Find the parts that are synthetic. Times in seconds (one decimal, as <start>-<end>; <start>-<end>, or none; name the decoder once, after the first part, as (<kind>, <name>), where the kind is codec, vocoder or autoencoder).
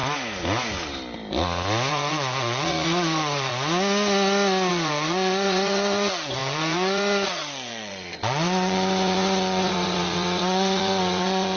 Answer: 1.9-3.5 (vocoder, Vocos); 4.7-11.6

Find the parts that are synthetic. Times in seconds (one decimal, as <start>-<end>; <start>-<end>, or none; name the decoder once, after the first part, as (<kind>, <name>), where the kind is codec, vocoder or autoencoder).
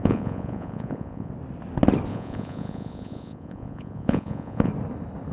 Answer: 0.0-1.3 (vocoder, Vocos); 2.1-4.7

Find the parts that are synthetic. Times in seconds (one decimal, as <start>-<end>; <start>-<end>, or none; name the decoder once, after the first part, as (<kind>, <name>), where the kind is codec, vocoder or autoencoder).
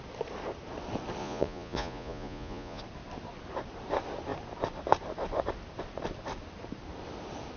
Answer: 1.2-2.8 (vocoder, Vocos)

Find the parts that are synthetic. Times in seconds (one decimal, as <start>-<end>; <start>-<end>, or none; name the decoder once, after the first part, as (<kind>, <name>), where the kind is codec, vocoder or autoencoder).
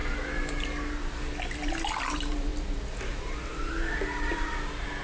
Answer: none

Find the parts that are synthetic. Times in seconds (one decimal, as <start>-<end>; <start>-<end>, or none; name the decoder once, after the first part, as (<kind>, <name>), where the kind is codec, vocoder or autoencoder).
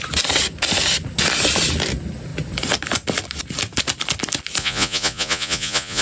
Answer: 4.6-6.0 (vocoder, Vocos)